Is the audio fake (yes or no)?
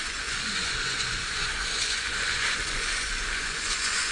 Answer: yes